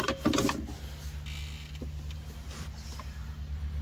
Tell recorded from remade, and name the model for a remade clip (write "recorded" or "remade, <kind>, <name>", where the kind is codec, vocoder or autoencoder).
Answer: recorded